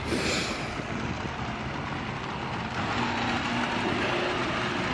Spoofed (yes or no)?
no